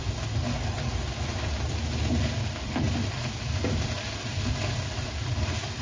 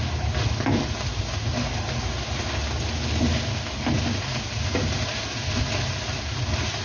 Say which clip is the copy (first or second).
first